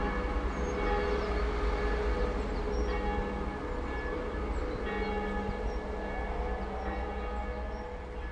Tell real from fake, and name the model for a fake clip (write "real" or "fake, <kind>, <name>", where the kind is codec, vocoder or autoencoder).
real